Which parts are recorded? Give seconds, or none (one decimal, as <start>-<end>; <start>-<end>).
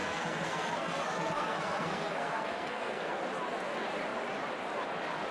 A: 3.2-5.3